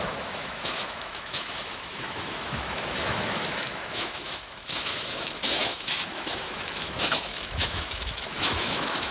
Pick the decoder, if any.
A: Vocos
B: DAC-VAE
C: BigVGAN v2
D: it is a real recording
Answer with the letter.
B